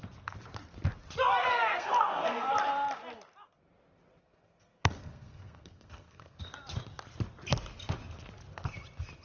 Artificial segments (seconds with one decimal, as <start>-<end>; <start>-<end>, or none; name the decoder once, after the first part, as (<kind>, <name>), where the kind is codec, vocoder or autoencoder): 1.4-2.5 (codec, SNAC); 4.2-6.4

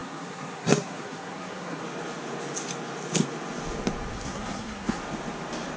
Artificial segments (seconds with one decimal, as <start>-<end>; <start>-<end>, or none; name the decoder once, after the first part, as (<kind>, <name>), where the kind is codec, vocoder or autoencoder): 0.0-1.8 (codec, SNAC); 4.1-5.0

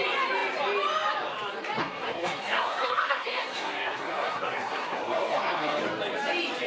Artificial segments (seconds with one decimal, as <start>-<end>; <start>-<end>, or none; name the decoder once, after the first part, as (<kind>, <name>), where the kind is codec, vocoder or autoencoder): 1.8-5.8 (codec, SNAC)

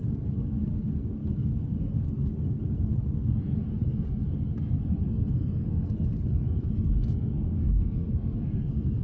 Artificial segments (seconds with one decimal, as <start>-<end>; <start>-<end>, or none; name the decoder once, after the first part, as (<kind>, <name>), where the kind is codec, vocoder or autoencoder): 0.0-9.0 (codec, SNAC)

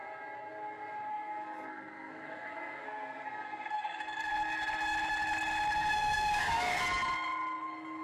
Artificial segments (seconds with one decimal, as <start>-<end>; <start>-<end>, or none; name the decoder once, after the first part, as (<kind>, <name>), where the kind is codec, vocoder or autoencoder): 1.1-4.3 (codec, SNAC); 5.9-6.8